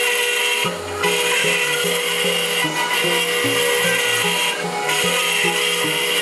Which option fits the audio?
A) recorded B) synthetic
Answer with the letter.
A